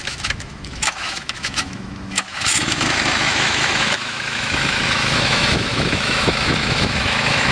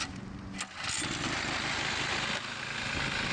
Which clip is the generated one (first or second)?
first